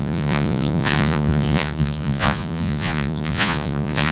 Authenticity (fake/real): fake